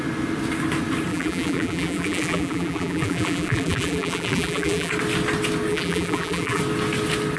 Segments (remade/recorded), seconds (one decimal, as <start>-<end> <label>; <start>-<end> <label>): 0.0-1.1 recorded; 1.1-4.9 remade; 4.9-5.7 recorded; 5.7-6.6 remade; 6.6-7.4 recorded